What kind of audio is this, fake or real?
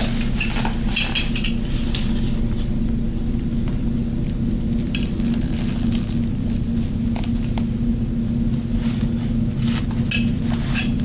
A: real